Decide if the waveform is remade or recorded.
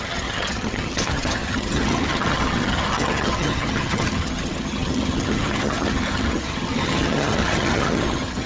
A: remade